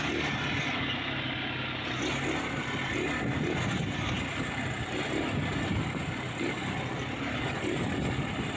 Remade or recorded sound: recorded